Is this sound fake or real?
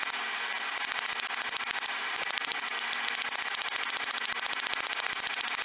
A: real